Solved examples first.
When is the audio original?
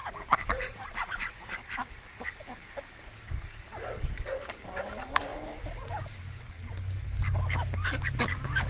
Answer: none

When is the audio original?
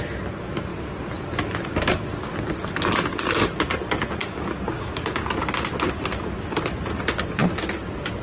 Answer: 0.0-4.2; 5.3-8.2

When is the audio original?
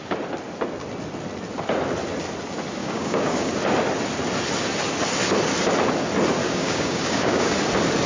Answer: 0.0-2.8; 3.5-6.4; 7.5-8.1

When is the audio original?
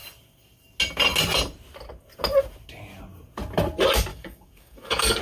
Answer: 0.0-4.1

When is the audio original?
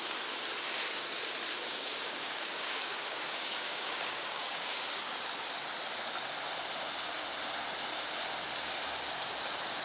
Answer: 0.0-1.7; 4.8-9.8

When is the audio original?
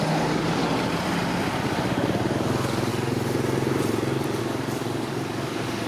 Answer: 0.6-1.6; 2.9-4.4